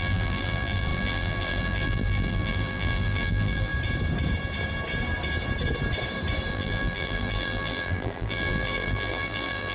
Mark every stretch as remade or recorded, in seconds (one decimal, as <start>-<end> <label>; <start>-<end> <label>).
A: 0.0-3.7 remade; 3.7-6.5 recorded; 6.5-9.7 remade

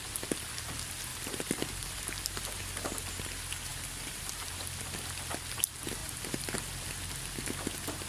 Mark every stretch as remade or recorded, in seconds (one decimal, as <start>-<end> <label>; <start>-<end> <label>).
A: 0.0-1.1 recorded; 1.1-2.4 remade; 2.4-3.7 recorded; 3.7-4.5 remade; 4.5-6.0 recorded; 6.0-6.5 remade; 6.5-8.1 recorded

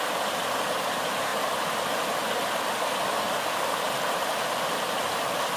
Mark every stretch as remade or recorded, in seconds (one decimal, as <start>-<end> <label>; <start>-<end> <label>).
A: 0.0-1.3 remade; 1.3-4.6 recorded; 4.6-5.6 remade

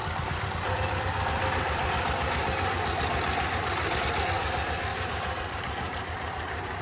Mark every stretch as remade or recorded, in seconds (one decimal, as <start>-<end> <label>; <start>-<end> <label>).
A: 0.0-4.9 recorded; 4.9-6.8 remade

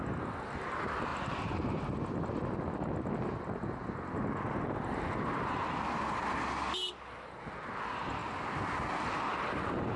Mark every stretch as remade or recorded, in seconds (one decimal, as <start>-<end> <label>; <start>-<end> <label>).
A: 0.0-10.0 recorded

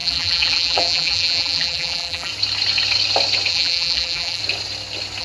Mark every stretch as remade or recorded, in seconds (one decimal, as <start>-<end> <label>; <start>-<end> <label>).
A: 0.0-2.3 remade; 2.3-3.5 recorded; 3.5-4.4 remade; 4.4-5.2 recorded

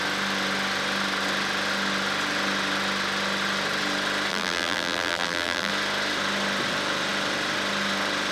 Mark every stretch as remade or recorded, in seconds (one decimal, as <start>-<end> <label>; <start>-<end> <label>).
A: 0.0-4.3 recorded; 4.3-5.7 remade; 5.7-8.3 recorded

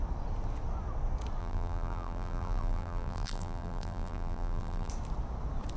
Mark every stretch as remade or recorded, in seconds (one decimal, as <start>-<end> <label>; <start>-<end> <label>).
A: 0.0-1.4 recorded; 1.4-4.9 remade; 4.9-5.8 recorded